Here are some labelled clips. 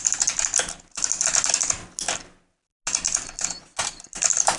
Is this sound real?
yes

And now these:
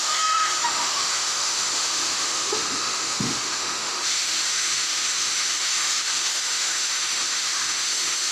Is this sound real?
no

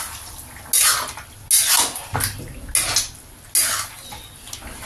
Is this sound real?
yes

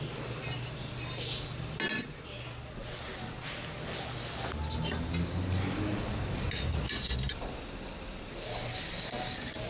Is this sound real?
yes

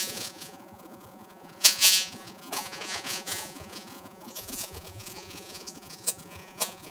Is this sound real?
no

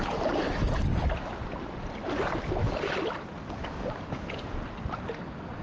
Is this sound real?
yes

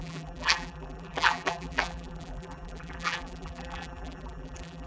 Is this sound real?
no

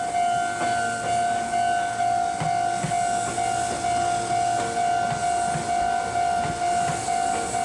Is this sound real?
yes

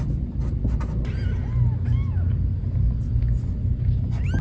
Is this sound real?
yes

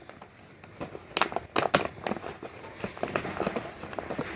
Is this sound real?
yes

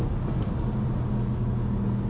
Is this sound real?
yes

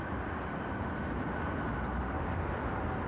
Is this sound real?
yes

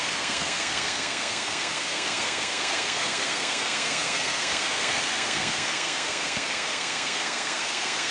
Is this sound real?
no